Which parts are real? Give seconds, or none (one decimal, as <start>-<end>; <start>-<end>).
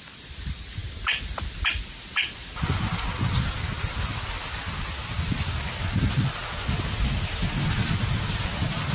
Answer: 0.0-8.9